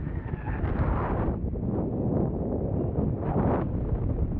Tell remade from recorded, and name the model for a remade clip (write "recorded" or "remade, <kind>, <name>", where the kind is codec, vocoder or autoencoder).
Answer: recorded